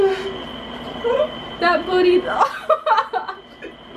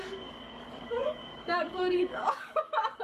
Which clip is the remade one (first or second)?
second